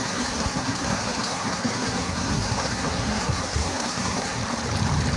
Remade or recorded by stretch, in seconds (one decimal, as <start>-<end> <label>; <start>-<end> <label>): 0.0-4.4 remade; 4.4-5.2 recorded